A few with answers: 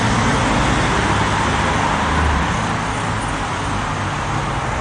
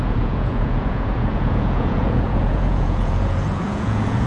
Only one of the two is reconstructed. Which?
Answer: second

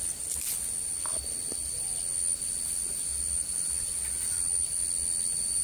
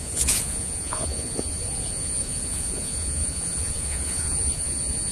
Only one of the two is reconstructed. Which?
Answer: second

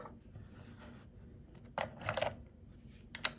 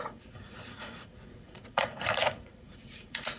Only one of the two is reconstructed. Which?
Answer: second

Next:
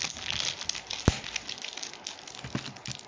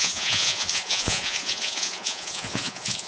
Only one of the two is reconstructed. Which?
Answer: second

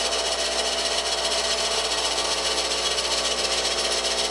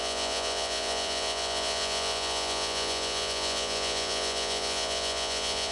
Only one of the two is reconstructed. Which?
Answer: second